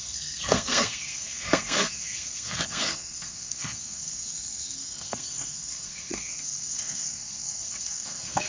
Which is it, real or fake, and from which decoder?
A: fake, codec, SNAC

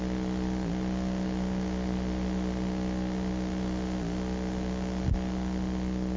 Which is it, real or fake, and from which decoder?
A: real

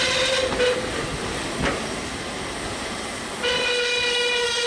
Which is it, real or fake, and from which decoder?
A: real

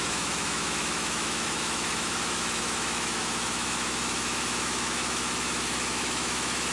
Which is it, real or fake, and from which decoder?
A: fake, autoencoder, DAC-VAE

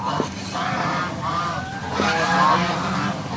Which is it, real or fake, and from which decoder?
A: real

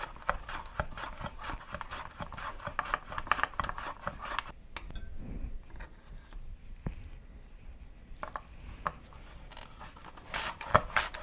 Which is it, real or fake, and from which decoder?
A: real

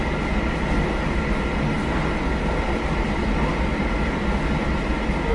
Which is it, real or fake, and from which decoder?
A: real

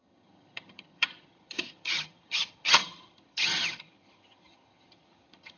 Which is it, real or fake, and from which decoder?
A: fake, vocoder, HiFi-GAN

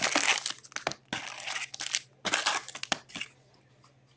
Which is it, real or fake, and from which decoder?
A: real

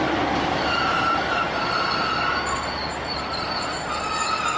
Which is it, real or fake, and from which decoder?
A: real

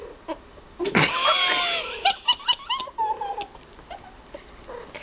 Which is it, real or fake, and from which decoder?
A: real